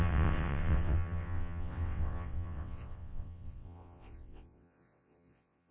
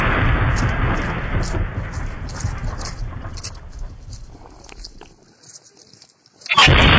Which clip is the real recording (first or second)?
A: second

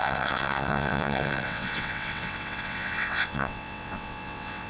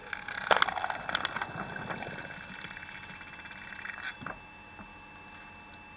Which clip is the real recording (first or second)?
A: second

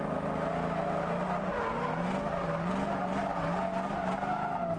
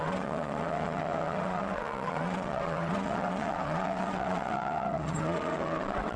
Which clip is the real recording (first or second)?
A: first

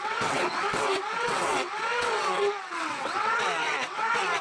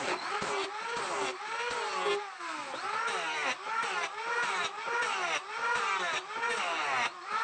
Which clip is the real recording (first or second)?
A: second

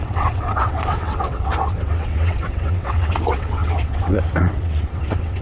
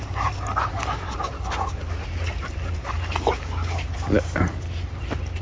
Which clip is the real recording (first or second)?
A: second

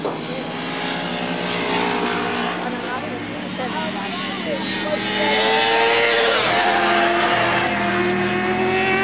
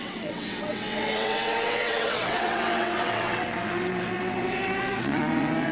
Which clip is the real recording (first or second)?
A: first